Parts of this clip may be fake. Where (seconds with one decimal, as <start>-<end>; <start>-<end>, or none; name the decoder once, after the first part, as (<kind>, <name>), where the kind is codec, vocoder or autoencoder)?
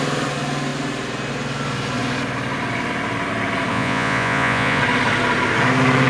3.7-4.8 (vocoder, Vocos)